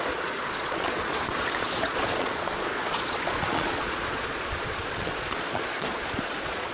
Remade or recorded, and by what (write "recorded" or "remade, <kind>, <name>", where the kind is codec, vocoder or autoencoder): remade, vocoder, Vocos